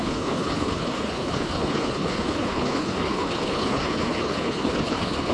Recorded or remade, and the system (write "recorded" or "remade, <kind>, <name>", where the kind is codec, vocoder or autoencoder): remade, codec, HILCodec